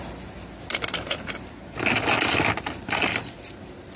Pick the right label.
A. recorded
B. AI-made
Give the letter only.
A